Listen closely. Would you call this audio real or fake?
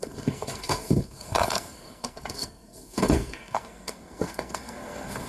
fake